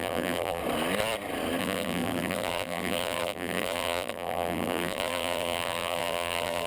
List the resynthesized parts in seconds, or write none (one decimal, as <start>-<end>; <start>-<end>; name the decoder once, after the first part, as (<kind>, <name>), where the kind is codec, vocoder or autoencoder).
0.0-0.6 (vocoder, BigVGAN v2); 1.6-6.7